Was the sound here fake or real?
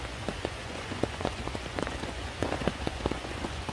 fake